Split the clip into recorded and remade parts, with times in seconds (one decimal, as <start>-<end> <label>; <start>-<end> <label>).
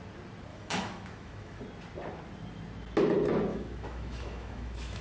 0.0-0.5 recorded; 0.5-1.6 remade; 1.6-3.5 recorded; 3.5-5.0 remade